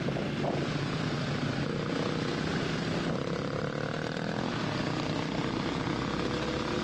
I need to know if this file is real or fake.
real